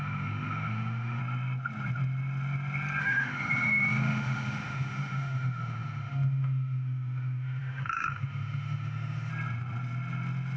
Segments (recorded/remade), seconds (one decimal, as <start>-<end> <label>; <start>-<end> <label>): 0.0-1.2 remade; 1.2-3.0 recorded; 3.0-9.3 remade; 9.3-10.6 recorded